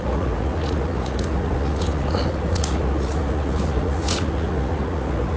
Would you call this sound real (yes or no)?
no